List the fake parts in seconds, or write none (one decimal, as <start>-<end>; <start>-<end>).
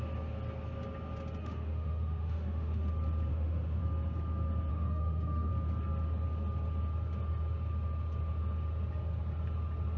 1.4-2.9; 3.3-3.8; 4.7-5.5